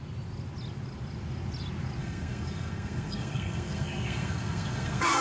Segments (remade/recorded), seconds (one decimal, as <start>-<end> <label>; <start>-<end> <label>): 0.0-2.0 recorded; 2.0-5.2 remade

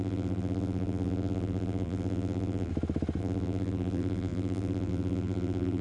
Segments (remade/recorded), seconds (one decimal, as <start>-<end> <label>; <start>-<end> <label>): 0.0-2.7 remade; 2.7-3.2 recorded; 3.2-5.8 remade